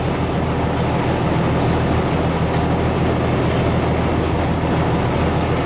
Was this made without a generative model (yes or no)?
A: yes